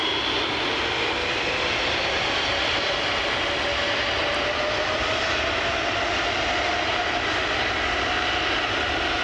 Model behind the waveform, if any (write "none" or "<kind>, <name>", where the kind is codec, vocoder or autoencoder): none